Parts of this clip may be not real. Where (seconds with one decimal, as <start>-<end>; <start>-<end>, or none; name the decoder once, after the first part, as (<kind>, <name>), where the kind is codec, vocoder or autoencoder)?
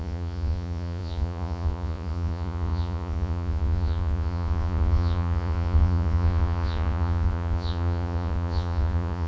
0.0-9.3 (vocoder, Vocos)